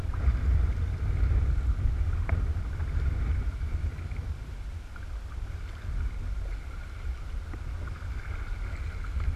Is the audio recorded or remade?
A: recorded